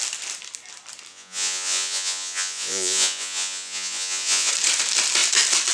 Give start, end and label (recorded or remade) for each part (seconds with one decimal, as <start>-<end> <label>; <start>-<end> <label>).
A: 0.0-1.1 recorded; 1.1-4.5 remade; 4.5-5.7 recorded